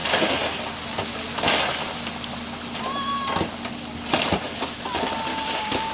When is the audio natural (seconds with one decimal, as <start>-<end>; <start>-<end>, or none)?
0.0-5.3